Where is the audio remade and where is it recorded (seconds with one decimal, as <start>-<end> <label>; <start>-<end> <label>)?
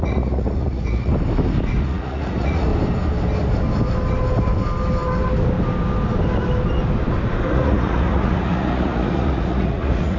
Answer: 0.0-1.1 remade; 1.1-1.8 recorded; 1.8-2.7 remade; 2.7-7.5 recorded; 7.5-10.2 remade